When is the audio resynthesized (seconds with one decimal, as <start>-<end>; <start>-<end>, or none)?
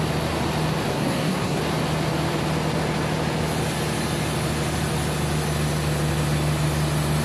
0.9-1.6